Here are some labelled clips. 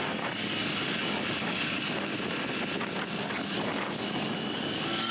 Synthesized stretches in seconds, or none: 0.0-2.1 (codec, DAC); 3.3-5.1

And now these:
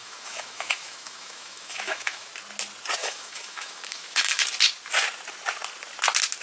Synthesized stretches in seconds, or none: 0.0-2.3 (autoencoder, DAC-VAE); 3.0-4.4

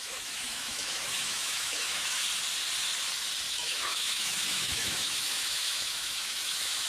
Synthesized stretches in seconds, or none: 0.0-2.2 (autoencoder, DAC-VAE); 3.5-6.9